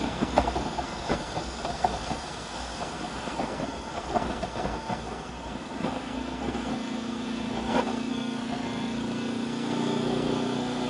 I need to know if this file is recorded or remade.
remade